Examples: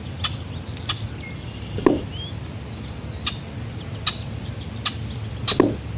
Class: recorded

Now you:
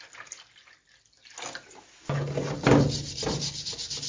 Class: recorded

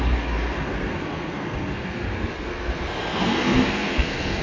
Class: remade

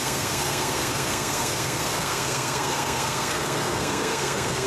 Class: remade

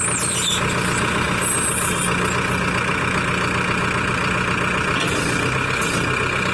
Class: recorded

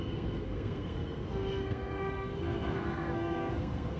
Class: remade